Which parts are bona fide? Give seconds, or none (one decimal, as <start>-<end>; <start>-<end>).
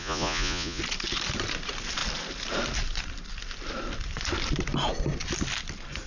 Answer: 0.8-6.1